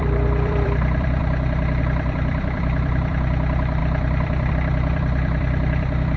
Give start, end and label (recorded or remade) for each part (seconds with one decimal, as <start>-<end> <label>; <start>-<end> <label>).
0.0-1.2 remade; 1.2-1.8 recorded; 1.8-6.2 remade